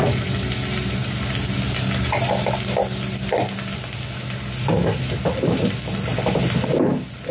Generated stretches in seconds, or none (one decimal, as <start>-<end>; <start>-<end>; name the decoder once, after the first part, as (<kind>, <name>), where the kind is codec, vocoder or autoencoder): none